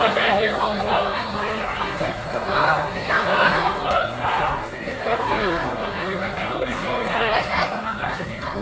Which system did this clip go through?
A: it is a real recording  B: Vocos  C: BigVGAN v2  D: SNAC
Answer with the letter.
D